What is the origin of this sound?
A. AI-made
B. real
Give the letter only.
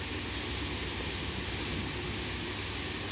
B